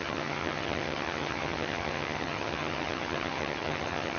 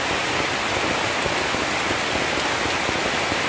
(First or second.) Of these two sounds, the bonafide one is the second